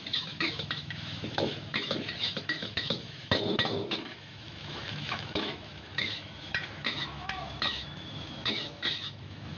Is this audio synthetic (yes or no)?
yes